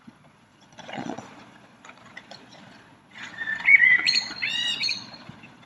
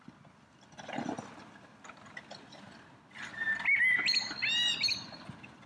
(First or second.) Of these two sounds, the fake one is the first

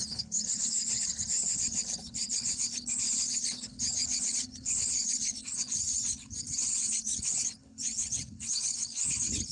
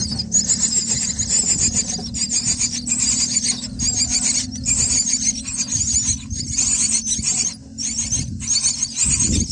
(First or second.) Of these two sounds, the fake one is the first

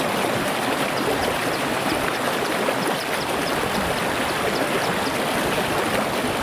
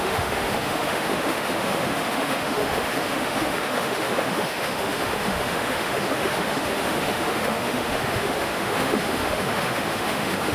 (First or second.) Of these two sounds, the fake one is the second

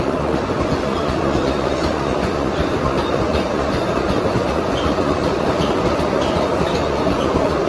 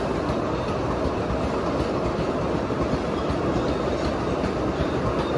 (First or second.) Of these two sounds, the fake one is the first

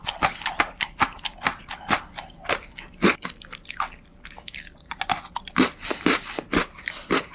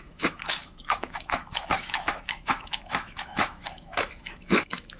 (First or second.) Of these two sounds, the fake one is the second